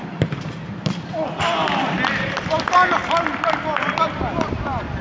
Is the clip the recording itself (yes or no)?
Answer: yes